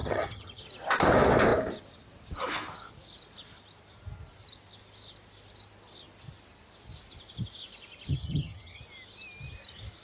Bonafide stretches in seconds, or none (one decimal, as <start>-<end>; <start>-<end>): 0.6-8.1; 8.8-10.0